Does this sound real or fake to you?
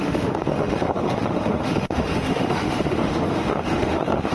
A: fake